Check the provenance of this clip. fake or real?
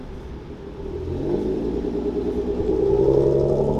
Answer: real